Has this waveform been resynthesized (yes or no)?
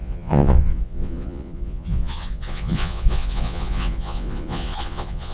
yes